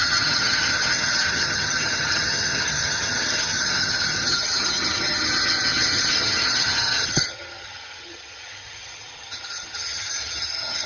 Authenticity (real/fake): fake